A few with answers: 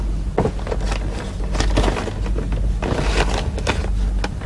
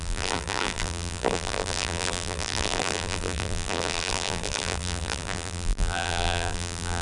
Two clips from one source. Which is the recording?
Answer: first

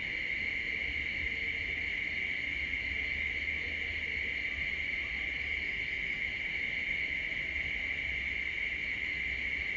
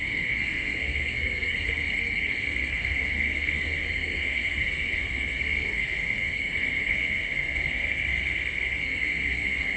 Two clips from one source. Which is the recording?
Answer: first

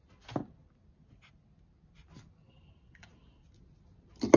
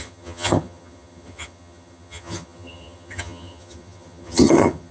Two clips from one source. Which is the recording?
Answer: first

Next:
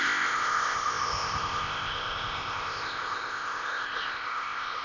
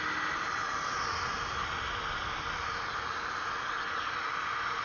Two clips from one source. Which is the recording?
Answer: second